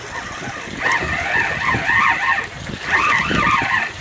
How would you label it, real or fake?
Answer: real